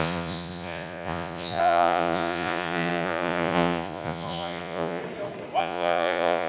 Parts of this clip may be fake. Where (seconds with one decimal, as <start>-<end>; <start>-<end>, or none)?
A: 0.0-5.0; 5.6-6.5